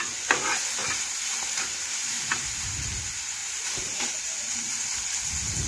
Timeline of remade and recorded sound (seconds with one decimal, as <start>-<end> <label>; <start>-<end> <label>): 0.0-0.8 recorded; 0.8-2.7 remade; 2.7-3.4 recorded; 3.4-4.6 remade; 4.6-5.7 recorded